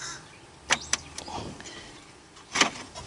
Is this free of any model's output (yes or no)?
yes